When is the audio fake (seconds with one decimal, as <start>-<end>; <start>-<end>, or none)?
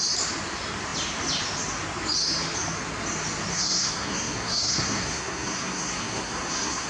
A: 3.5-6.9